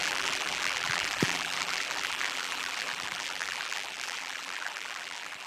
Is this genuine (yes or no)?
no